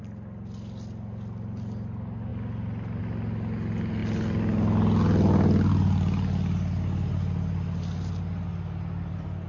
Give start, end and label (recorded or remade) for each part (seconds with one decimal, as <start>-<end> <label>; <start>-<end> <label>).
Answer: 0.0-9.5 recorded